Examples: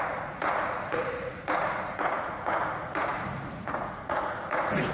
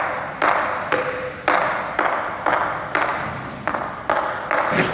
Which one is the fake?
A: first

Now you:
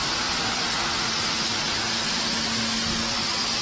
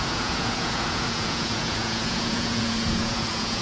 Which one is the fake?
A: second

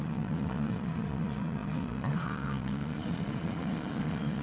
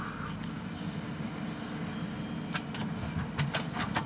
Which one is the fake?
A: first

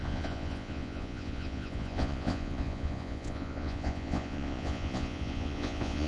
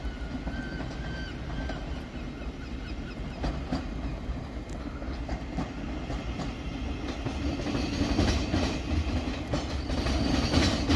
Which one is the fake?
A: first